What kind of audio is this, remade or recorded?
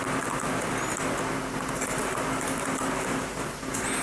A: recorded